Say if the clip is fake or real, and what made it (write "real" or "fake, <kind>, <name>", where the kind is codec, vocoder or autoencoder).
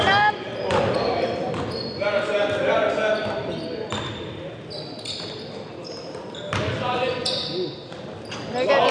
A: real